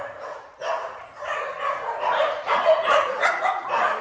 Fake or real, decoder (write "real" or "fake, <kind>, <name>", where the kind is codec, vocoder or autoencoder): fake, vocoder, Vocos